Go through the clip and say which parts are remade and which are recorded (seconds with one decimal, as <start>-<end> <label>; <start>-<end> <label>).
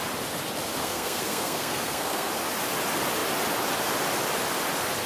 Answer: 0.0-0.8 recorded; 0.8-2.3 remade; 2.3-5.1 recorded